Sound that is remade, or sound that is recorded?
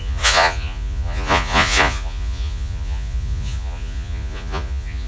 remade